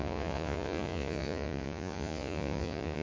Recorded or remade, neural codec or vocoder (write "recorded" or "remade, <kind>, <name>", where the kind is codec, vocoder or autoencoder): remade, vocoder, Vocos